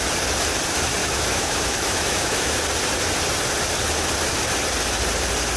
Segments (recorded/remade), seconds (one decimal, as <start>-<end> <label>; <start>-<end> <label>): 0.0-1.0 recorded; 1.0-2.6 remade; 2.6-5.6 recorded